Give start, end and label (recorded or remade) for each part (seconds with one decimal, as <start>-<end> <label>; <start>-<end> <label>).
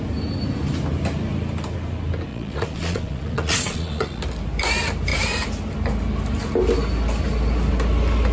0.0-2.3 recorded; 2.3-4.2 remade; 4.2-8.3 recorded